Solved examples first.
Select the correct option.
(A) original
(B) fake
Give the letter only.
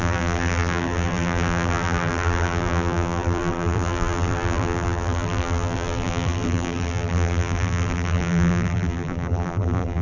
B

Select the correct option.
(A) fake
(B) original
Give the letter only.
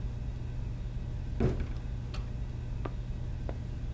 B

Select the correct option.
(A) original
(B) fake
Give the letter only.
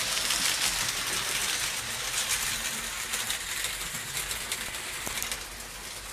A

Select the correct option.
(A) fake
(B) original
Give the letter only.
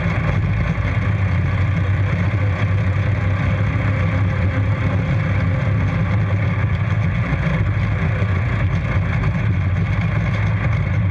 B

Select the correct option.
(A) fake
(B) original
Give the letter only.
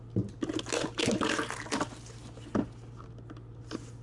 B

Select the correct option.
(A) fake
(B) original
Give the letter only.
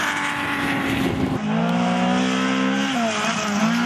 B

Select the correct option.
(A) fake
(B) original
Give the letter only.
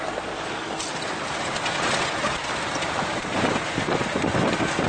B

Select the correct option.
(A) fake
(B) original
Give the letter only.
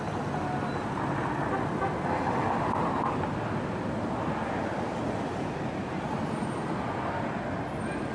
B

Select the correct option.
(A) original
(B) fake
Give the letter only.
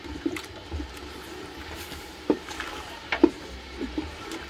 B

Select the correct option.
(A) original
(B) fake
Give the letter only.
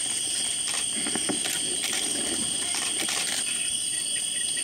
A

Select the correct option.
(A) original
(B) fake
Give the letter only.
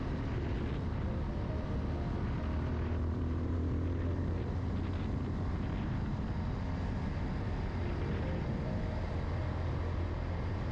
A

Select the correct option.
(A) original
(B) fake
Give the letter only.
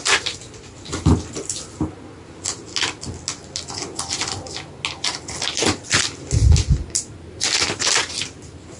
A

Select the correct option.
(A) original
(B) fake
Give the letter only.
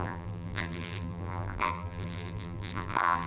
B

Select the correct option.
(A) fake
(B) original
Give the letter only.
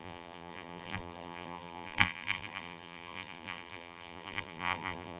A